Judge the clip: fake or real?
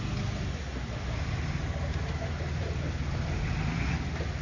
real